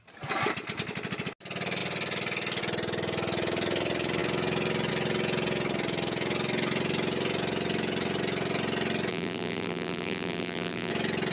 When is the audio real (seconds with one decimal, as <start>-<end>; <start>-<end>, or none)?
0.0-9.1; 10.9-11.3